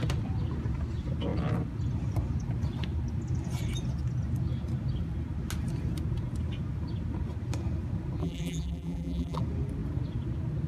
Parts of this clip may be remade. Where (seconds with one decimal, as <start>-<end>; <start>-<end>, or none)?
8.2-9.4